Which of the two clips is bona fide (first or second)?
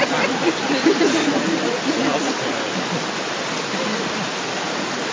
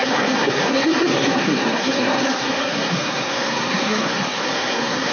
first